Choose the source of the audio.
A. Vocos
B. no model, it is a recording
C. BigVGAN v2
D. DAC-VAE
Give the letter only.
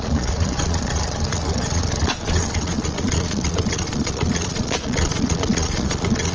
A